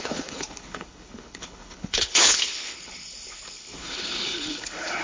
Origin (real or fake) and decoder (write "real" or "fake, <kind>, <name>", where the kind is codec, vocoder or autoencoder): fake, codec, HILCodec